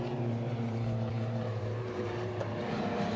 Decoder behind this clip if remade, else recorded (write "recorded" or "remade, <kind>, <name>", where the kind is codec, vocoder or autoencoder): remade, vocoder, BigVGAN v2